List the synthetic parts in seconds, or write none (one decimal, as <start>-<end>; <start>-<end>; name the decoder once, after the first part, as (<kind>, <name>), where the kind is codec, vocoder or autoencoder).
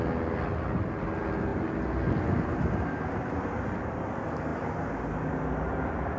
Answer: none